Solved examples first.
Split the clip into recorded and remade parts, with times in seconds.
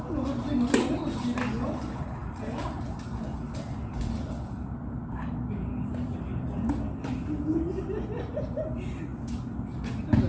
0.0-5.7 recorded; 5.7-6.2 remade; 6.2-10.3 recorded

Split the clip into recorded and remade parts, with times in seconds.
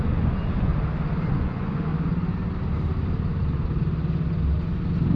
0.0-0.7 remade; 0.7-1.3 recorded; 1.3-1.9 remade; 1.9-5.2 recorded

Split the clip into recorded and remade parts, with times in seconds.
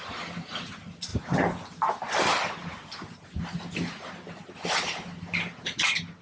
0.0-6.2 recorded